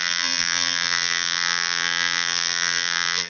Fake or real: fake